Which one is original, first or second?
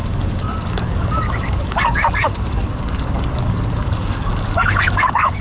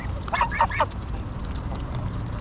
second